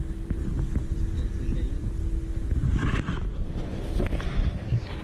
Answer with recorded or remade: recorded